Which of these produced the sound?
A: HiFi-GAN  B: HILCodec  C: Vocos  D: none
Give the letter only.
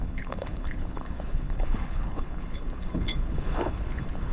B